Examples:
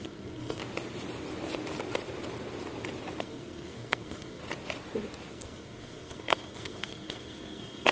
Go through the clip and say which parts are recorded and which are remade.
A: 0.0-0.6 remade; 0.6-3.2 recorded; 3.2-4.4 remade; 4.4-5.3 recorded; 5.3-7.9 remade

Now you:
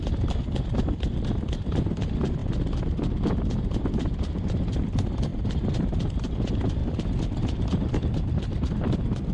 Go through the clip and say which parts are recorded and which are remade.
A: 0.0-9.3 recorded

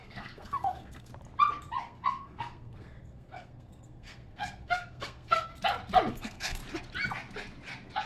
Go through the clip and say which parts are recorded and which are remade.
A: 0.0-1.1 remade; 1.1-1.8 recorded; 1.8-5.5 remade; 5.5-6.1 recorded; 6.1-6.6 remade; 6.6-8.1 recorded

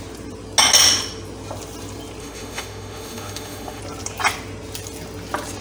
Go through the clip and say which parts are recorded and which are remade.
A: 0.0-2.2 recorded; 2.2-3.8 remade; 3.8-5.6 recorded

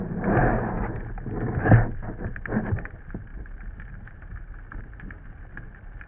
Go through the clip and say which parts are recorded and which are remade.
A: 0.0-6.1 recorded